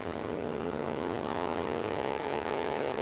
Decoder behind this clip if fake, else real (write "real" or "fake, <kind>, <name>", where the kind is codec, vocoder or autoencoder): fake, vocoder, HiFi-GAN